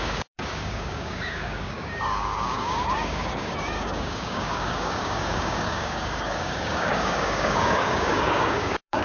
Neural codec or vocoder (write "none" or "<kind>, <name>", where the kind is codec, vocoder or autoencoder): codec, DAC